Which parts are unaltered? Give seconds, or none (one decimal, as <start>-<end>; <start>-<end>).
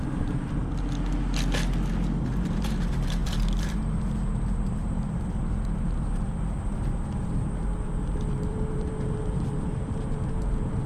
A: 0.6-2.2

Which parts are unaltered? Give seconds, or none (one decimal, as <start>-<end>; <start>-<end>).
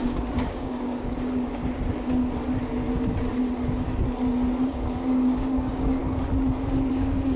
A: 1.6-4.7; 6.0-6.9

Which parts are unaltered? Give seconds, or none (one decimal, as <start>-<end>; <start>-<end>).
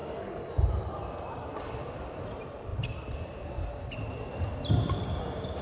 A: 0.5-5.6